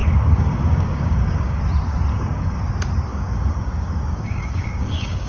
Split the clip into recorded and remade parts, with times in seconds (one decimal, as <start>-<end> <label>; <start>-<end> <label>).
0.0-1.6 remade; 1.6-2.1 recorded; 2.1-2.6 remade; 2.6-3.1 recorded; 3.1-5.3 remade